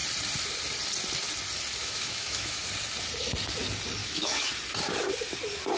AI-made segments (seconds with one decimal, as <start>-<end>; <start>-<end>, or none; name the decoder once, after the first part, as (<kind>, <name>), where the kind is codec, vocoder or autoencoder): 1.8-2.6 (autoencoder, DAC-VAE); 4.0-4.5